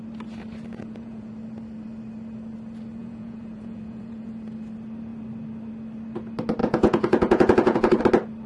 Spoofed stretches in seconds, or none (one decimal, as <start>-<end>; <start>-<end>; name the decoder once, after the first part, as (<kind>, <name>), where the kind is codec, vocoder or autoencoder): 0.7-1.3 (vocoder, Vocos); 3.0-4.3; 6.6-8.0